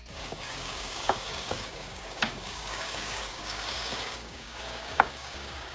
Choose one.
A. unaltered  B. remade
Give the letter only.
B